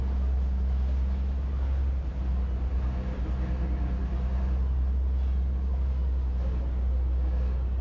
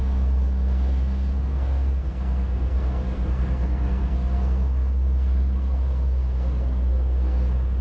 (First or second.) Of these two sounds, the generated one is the second